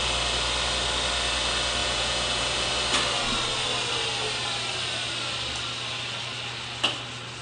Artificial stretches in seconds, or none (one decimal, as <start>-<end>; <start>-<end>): 1.8-2.7